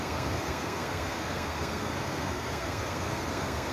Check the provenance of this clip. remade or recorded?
remade